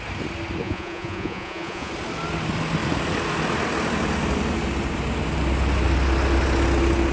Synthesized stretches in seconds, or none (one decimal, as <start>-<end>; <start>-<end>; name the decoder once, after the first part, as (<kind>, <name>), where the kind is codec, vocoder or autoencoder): 0.6-1.9 (vocoder, Vocos)